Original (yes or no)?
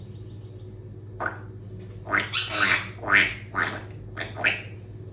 yes